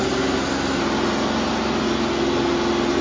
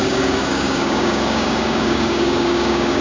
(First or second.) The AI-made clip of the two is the second